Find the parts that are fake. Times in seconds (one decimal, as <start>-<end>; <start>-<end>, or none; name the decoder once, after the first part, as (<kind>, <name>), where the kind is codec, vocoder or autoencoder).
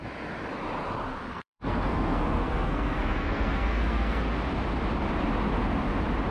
1.3-4.2 (codec, SNAC)